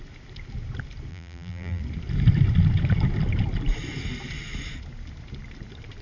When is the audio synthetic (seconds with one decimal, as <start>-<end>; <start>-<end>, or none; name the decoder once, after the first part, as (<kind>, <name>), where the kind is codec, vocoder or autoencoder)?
1.1-1.8 (vocoder, BigVGAN v2)